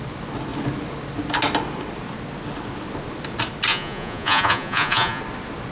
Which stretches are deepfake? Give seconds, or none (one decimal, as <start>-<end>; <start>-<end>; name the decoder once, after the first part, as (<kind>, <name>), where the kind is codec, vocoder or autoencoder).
3.7-5.2 (vocoder, Vocos)